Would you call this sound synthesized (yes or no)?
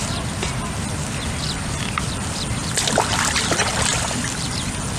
yes